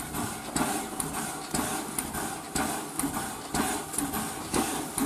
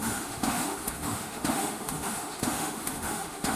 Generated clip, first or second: second